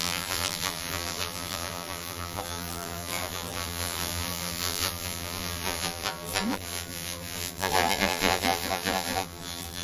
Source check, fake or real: fake